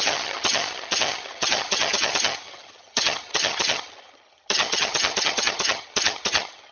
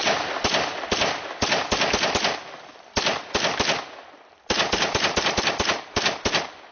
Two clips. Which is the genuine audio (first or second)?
second